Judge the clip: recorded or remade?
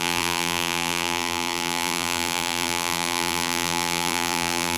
remade